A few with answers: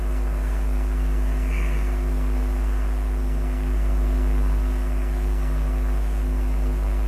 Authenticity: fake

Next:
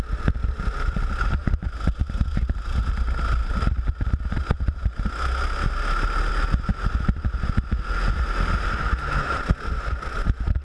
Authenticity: real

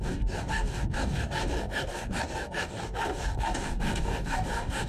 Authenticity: fake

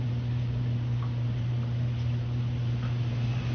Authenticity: real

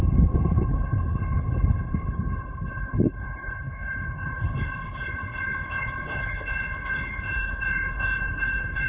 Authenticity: fake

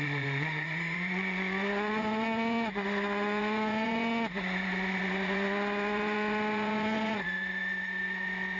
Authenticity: fake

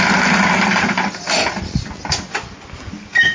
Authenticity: real